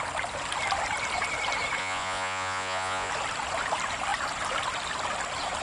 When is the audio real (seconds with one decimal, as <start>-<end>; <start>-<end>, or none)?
0.0-1.8; 3.1-5.6

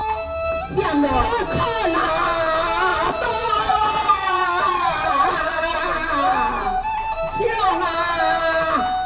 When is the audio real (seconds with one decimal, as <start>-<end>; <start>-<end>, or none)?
0.0-2.9; 5.8-9.1

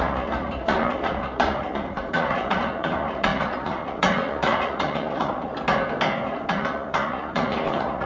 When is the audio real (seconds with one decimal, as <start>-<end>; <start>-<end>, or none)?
5.5-6.5

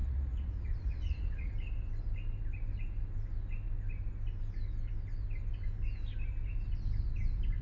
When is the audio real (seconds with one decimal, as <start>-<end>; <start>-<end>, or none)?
1.5-7.6

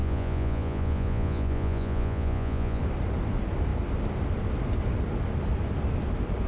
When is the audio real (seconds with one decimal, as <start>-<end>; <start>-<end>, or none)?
2.8-6.5

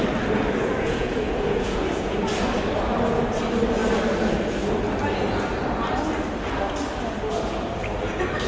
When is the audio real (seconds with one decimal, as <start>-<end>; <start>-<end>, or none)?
0.0-0.6; 2.2-8.5